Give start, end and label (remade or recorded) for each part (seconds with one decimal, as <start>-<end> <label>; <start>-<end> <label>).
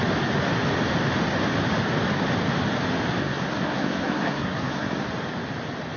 0.0-3.2 recorded; 3.2-5.1 remade; 5.1-6.0 recorded